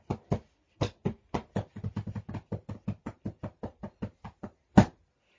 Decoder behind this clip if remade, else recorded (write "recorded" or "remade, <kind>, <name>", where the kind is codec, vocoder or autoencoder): recorded